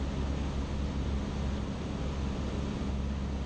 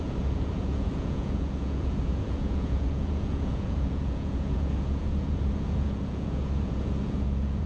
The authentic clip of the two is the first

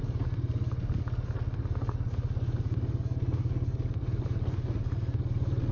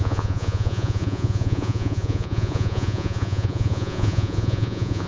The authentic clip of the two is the first